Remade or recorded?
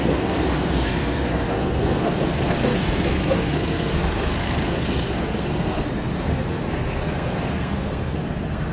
remade